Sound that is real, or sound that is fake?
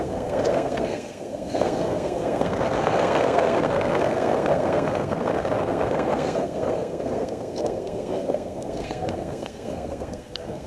fake